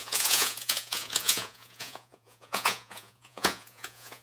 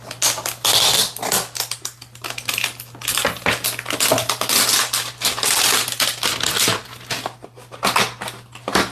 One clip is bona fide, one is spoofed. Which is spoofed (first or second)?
first